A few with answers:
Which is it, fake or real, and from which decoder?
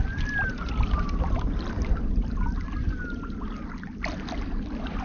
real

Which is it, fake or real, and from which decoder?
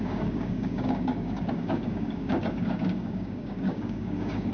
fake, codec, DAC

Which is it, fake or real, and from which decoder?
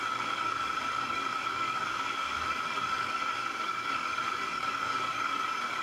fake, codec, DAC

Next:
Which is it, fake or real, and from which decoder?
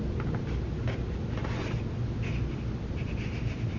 real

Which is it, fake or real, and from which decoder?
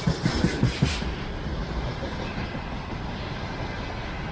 real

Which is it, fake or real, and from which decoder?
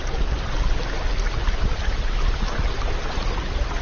real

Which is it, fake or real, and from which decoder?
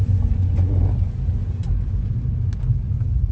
real